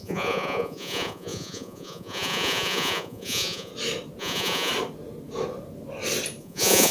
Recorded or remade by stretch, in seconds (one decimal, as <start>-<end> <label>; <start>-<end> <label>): 0.0-3.7 remade; 3.7-4.2 recorded; 4.2-4.7 remade; 4.7-6.4 recorded; 6.4-6.9 remade